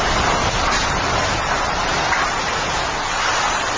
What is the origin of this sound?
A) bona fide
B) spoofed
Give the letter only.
A